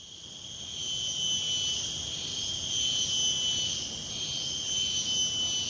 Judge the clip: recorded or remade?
recorded